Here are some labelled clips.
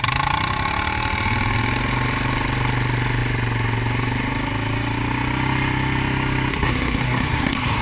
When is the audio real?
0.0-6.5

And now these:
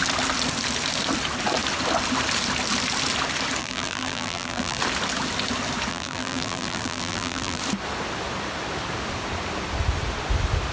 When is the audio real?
0.0-3.6; 4.8-5.9; 7.6-10.7

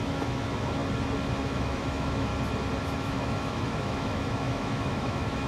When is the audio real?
0.8-1.4; 2.3-2.8

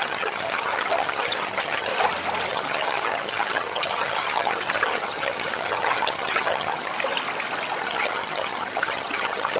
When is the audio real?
1.9-2.5; 6.9-7.8